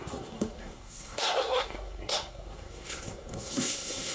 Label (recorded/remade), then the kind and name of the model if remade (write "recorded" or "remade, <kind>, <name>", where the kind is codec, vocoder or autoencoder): remade, codec, SNAC